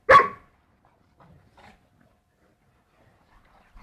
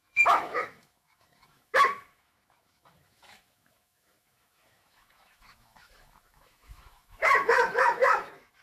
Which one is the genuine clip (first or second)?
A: first